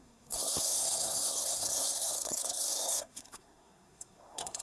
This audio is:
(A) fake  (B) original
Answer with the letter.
A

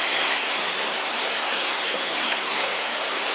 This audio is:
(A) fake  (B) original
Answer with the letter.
A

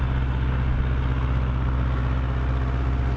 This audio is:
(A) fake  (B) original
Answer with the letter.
B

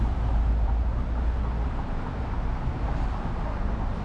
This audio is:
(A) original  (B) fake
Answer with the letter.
A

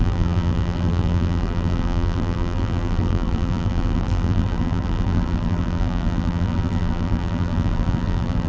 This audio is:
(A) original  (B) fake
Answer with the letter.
B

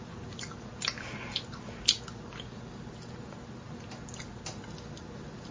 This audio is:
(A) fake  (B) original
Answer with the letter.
B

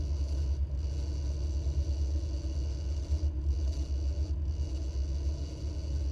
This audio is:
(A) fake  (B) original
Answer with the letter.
B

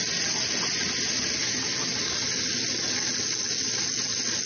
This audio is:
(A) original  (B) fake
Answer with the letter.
A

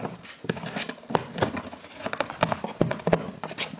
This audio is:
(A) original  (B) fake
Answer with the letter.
A